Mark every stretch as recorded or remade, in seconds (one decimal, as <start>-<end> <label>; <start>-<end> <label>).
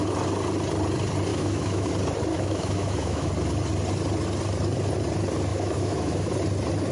0.0-1.3 recorded; 1.3-1.9 remade; 1.9-2.3 recorded; 2.3-3.3 remade; 3.3-5.5 recorded; 5.5-6.3 remade; 6.3-6.9 recorded